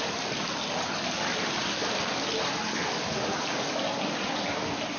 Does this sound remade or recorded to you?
recorded